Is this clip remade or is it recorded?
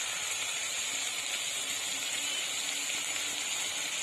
recorded